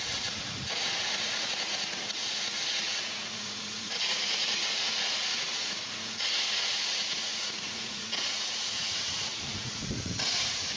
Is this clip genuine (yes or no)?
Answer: no